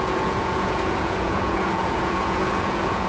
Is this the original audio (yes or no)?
no